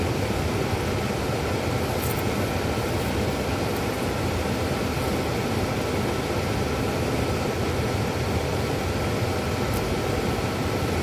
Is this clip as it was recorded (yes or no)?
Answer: yes